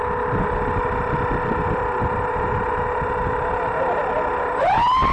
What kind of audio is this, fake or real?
real